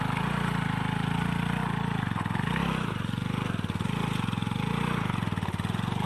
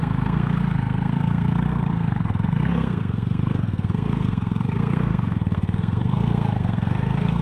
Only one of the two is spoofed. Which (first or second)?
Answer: second